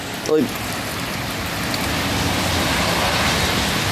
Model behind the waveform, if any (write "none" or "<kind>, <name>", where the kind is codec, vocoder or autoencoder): none